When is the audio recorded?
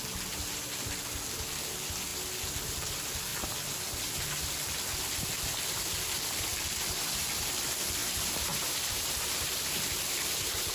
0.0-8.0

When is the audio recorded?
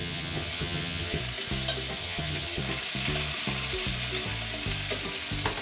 1.2-2.0; 2.6-5.6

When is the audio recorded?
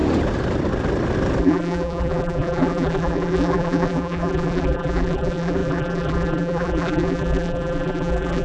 0.0-1.4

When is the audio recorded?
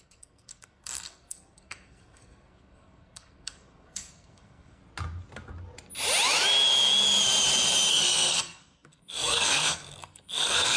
4.8-7.9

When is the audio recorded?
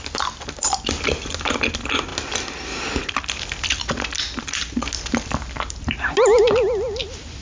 0.0-7.4